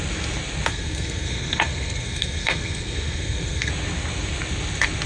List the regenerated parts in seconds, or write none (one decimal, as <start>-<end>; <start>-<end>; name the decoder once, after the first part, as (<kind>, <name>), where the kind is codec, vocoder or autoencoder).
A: 0.7-3.7 (codec, SNAC)